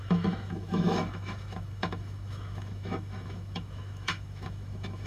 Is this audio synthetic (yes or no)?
yes